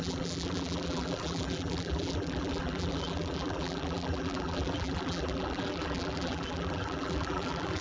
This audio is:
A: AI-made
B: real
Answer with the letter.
A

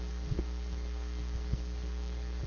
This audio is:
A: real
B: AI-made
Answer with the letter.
B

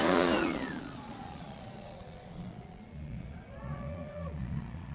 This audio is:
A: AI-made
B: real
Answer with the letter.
A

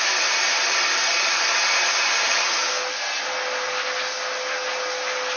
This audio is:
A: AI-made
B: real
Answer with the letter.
B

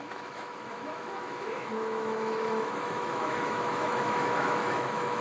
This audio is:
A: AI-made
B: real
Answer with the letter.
A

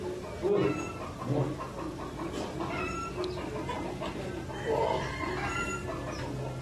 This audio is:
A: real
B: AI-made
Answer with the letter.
A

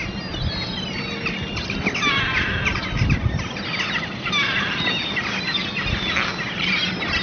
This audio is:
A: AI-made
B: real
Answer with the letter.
B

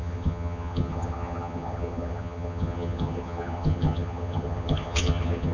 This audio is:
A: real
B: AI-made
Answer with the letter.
B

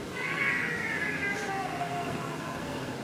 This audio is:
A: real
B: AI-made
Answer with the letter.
B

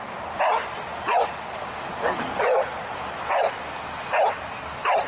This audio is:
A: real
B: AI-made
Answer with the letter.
A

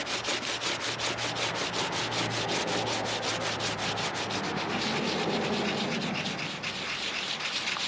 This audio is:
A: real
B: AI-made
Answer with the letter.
A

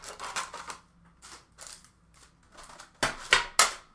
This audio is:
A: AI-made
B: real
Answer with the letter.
B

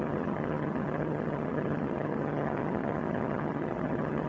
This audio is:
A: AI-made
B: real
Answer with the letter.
A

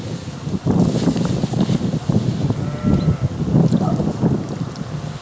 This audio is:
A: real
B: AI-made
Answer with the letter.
A